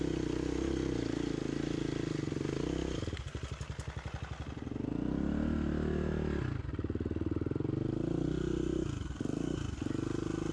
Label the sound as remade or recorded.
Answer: recorded